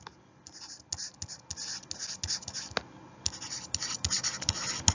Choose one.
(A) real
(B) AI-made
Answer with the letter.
A